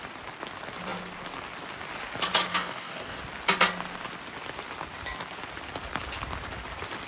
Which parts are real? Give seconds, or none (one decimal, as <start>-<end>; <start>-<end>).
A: 0.0-2.5; 3.2-7.1